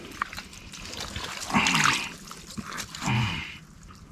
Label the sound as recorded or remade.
recorded